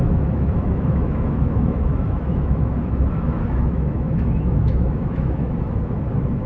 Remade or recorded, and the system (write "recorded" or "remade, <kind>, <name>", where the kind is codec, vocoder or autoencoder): remade, autoencoder, DAC-VAE